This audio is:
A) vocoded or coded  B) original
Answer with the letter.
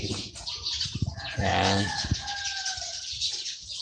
A